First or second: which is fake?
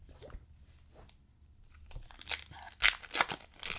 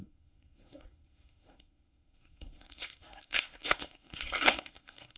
second